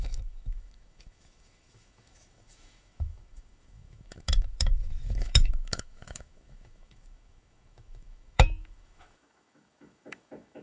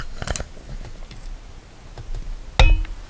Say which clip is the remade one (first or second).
first